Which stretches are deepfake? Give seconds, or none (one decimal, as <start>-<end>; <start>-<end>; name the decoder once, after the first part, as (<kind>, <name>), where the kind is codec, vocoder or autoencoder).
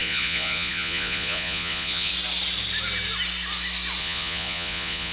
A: 0.0-2.1 (vocoder, Vocos); 4.0-5.1